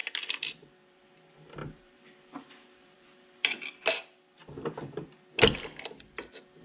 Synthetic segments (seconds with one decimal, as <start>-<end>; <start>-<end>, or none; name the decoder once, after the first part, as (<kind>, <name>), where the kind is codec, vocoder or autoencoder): 0.0-1.0 (vocoder, BigVGAN v2); 1.6-3.9